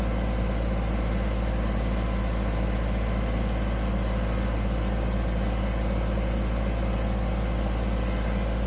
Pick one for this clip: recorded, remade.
recorded